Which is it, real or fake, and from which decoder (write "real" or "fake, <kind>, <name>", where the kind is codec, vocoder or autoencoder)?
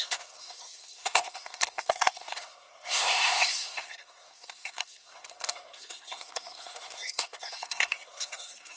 fake, codec, SNAC